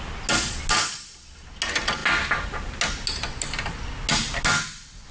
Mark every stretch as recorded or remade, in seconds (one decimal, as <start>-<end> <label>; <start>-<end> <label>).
0.0-5.1 recorded